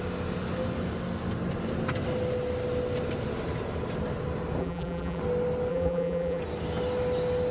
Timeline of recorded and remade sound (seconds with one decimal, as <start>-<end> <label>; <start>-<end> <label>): 0.0-4.6 recorded; 4.6-5.2 remade; 5.2-5.7 recorded; 5.7-6.4 remade; 6.4-7.5 recorded